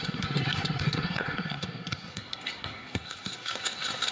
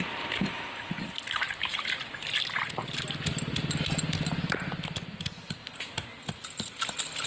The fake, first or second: first